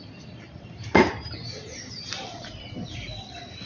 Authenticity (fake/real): real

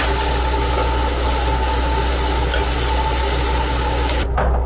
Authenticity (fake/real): real